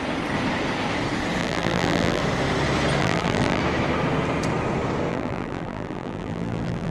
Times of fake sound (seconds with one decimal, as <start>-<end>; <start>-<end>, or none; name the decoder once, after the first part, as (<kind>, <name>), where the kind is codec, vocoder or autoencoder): 1.4-2.2 (vocoder, BigVGAN v2); 3.0-3.6; 5.1-6.9